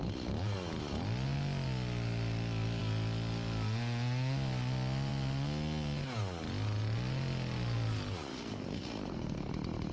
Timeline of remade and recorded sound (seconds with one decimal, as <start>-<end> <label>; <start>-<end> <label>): 0.0-8.3 recorded; 8.3-9.5 remade; 9.5-9.9 recorded